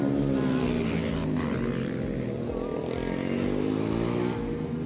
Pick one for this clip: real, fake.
real